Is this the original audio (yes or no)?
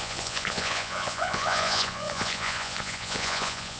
no